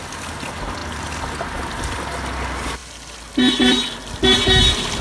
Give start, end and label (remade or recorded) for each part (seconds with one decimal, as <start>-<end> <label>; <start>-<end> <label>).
0.0-5.0 recorded